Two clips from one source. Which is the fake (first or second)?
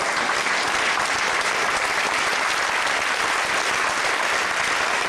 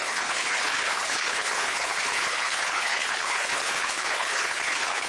second